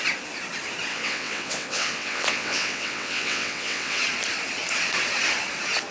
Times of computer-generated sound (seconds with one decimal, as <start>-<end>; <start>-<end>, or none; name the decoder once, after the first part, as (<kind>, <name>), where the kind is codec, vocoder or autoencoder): 0.9-4.0 (vocoder, WaveNeXt)